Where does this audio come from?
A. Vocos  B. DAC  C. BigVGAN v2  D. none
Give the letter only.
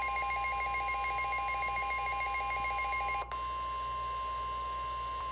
D